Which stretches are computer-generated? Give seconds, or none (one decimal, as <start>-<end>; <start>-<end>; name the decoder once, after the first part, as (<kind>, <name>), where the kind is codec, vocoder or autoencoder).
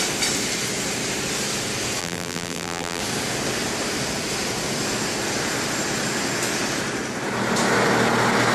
2.0-3.0 (vocoder, BigVGAN v2)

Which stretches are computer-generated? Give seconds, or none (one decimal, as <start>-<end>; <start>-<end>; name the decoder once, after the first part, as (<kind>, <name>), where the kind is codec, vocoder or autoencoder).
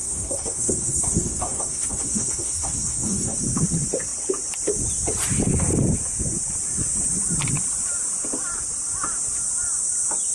0.0-3.4 (codec, SNAC)